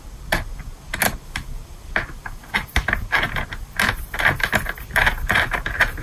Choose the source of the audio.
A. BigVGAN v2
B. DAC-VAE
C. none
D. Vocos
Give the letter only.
C